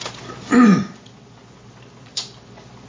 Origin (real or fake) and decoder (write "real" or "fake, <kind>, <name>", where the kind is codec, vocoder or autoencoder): real